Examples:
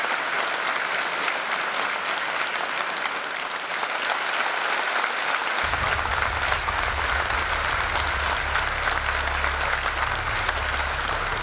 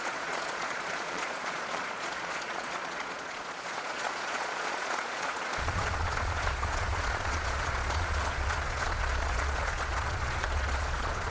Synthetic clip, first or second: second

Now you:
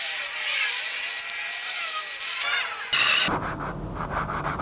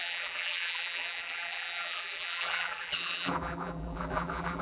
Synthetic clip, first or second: second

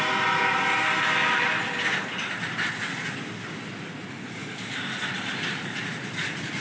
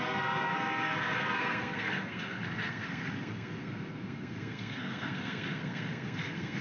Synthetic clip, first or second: second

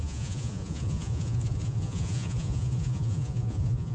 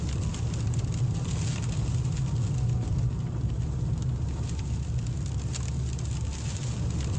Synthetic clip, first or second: first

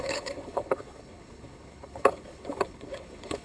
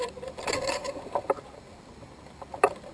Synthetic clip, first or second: first